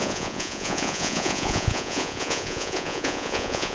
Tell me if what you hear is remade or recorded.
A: remade